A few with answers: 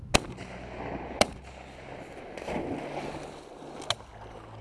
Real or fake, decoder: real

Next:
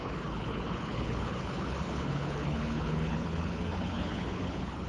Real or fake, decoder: fake, codec, HILCodec